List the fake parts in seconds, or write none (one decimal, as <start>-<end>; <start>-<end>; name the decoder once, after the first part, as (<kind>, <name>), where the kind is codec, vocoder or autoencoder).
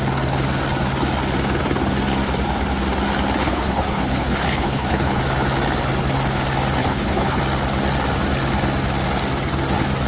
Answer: 3.4-5.2 (codec, HILCodec); 6.8-7.4